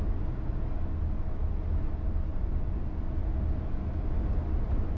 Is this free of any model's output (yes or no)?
yes